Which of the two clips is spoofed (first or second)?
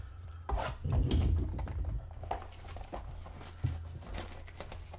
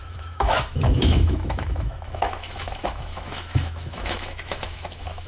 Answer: second